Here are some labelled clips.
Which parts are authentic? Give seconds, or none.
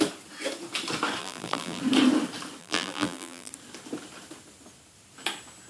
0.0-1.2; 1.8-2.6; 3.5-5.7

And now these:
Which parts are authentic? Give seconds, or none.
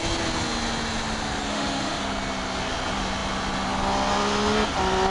0.0-1.5; 2.0-5.1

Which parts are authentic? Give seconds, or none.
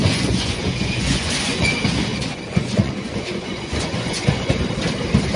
1.7-2.1; 4.6-5.4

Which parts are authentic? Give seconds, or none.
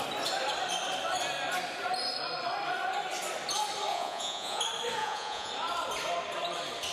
0.0-3.9; 4.6-5.0; 5.5-6.9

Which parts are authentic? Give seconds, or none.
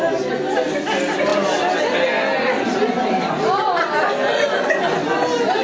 0.0-5.6